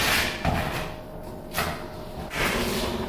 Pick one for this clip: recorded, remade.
recorded